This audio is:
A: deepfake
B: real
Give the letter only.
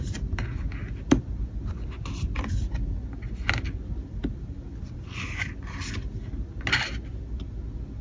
B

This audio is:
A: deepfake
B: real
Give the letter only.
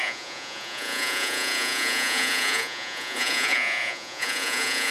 A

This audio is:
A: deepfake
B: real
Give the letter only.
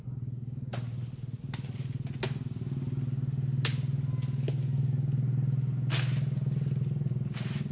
B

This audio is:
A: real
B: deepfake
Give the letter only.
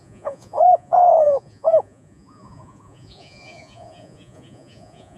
B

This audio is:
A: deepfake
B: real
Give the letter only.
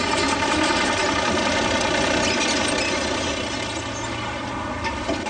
B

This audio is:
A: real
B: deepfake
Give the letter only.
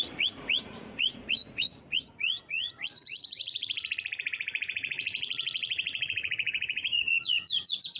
B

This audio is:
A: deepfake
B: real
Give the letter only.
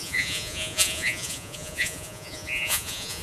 A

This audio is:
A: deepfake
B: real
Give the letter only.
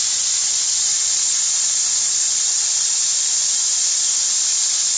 B